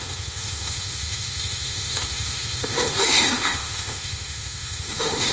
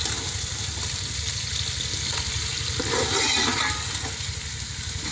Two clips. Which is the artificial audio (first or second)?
first